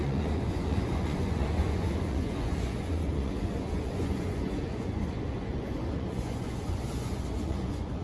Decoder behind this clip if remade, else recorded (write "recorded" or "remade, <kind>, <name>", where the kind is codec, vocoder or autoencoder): remade, vocoder, Vocos